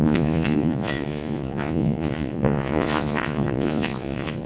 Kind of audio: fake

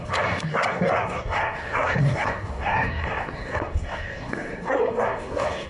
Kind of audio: fake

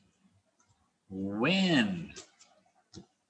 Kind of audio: real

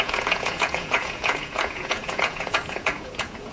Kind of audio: fake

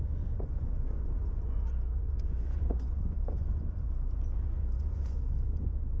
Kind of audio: fake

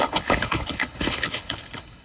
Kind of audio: fake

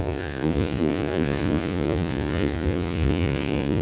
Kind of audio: fake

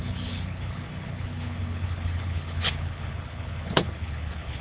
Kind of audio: fake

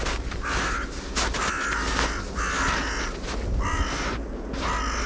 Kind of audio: real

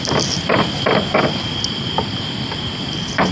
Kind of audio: real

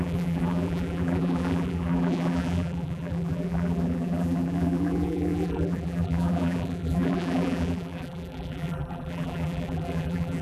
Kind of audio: fake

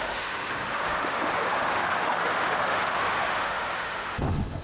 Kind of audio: fake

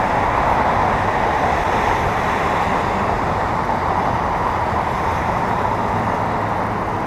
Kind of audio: real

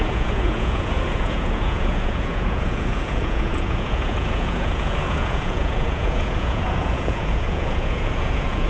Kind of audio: fake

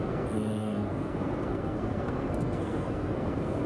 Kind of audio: fake